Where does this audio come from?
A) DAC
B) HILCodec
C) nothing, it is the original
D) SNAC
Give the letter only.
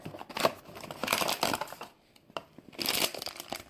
C